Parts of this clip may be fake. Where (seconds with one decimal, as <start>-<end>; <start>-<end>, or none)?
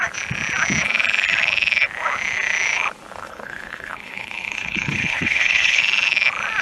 3.2-5.8